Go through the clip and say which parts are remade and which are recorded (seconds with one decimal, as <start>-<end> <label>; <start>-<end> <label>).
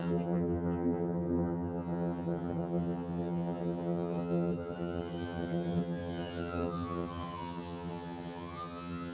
0.0-9.1 remade